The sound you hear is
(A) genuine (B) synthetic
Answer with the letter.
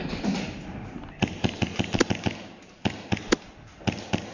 A